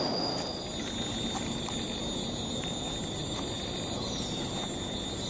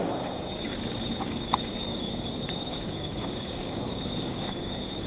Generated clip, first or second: second